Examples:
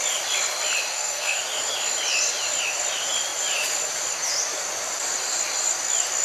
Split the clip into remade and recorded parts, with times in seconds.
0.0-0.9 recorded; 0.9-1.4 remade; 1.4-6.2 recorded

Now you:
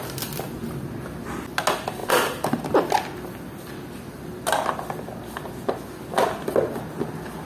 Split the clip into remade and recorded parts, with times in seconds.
0.0-7.5 recorded

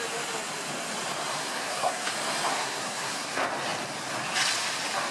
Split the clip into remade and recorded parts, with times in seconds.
0.0-1.4 recorded; 1.4-2.1 remade; 2.1-2.5 recorded; 2.5-3.3 remade; 3.3-5.1 recorded

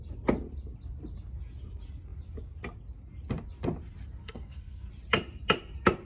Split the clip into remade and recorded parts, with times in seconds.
0.0-4.2 recorded; 4.2-4.9 remade; 4.9-6.1 recorded

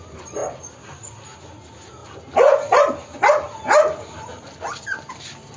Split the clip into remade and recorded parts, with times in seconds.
0.0-5.6 recorded

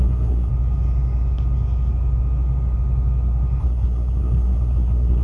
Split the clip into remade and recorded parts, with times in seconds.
0.0-0.5 remade; 0.5-3.6 recorded; 3.6-5.2 remade

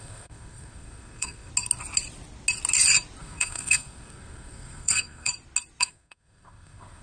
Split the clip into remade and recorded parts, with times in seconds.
0.0-1.5 remade; 1.5-3.2 recorded; 3.2-5.3 remade; 5.3-5.8 recorded; 5.8-7.0 remade